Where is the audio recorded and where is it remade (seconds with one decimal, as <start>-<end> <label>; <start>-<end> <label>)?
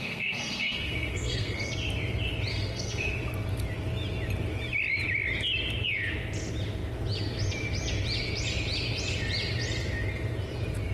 0.0-1.7 remade; 1.7-2.5 recorded; 2.5-3.1 remade; 3.1-10.9 recorded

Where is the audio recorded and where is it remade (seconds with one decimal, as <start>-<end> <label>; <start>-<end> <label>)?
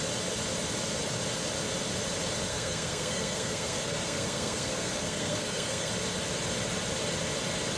0.0-2.5 recorded; 2.5-5.9 remade; 5.9-7.8 recorded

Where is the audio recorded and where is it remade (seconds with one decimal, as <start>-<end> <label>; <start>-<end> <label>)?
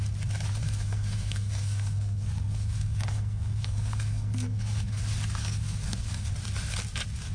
0.0-0.6 recorded; 0.6-5.0 remade; 5.0-5.4 recorded; 5.4-6.3 remade; 6.3-7.3 recorded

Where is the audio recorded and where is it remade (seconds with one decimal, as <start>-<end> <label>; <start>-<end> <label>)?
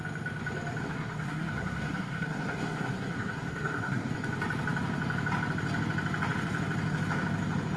0.0-0.8 recorded; 0.8-4.1 remade; 4.1-7.8 recorded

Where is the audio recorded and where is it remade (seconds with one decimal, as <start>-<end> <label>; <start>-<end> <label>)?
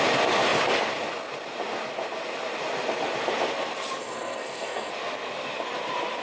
0.0-4.0 recorded; 4.0-4.9 remade; 4.9-6.2 recorded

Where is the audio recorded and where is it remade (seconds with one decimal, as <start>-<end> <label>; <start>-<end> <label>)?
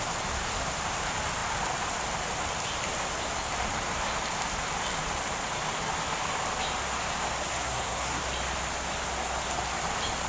0.0-7.5 recorded; 7.5-8.2 remade; 8.2-10.3 recorded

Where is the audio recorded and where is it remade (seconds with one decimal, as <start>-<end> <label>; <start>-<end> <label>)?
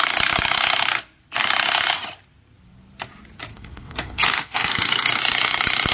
0.0-3.5 recorded; 3.5-5.2 remade; 5.2-5.9 recorded